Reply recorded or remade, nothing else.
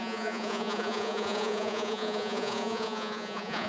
remade